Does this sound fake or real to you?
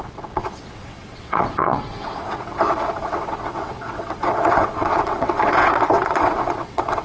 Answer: fake